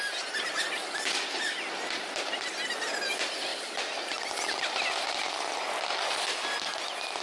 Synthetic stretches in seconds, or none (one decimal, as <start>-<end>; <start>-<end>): none